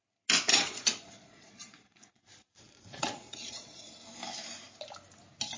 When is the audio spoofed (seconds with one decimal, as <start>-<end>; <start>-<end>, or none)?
0.5-3.9